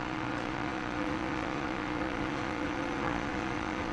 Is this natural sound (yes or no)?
no